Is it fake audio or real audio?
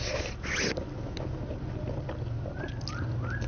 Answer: real